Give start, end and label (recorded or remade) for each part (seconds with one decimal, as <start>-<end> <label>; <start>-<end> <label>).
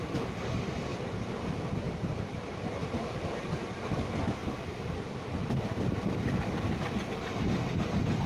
0.0-0.9 recorded; 0.9-2.3 remade; 2.3-2.8 recorded; 2.8-3.5 remade; 3.5-8.3 recorded